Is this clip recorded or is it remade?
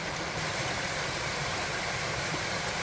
recorded